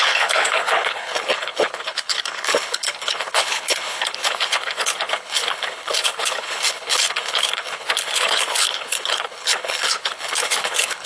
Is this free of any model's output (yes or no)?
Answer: no